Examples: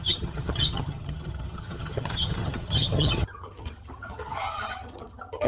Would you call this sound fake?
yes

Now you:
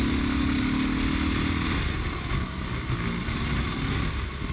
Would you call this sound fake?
no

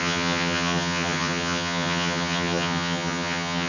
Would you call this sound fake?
yes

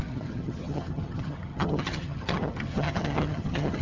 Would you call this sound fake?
yes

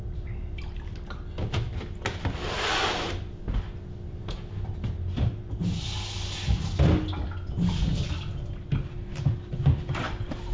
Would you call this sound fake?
no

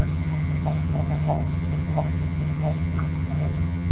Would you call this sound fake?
yes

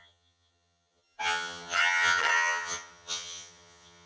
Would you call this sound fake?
yes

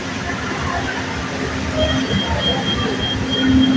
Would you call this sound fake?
no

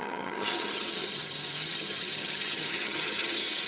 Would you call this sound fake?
yes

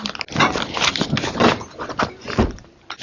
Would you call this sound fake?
no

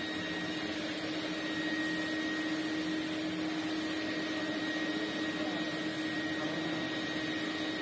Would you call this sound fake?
no